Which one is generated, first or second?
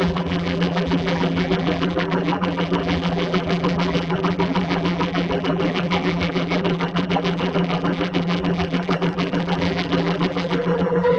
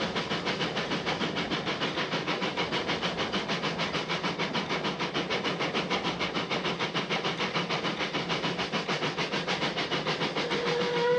first